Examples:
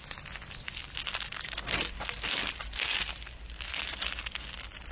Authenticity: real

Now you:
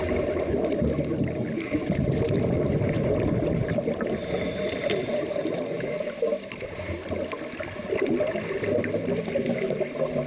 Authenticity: real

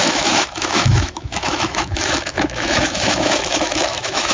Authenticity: fake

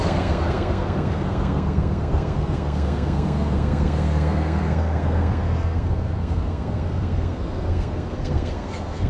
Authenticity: fake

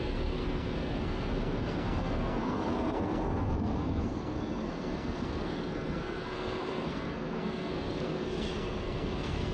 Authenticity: fake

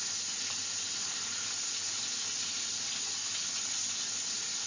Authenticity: real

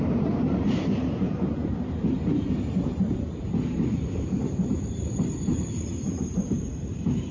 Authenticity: fake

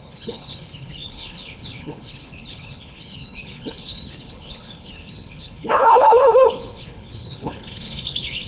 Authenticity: fake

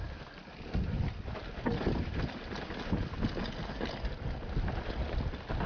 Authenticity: real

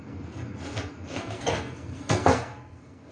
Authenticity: fake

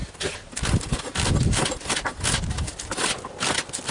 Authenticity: real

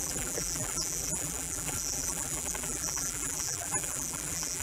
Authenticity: fake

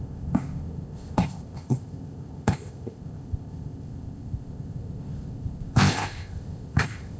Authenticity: fake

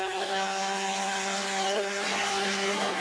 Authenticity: fake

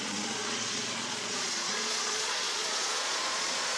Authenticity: fake